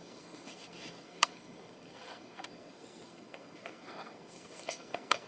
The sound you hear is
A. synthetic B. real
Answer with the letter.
A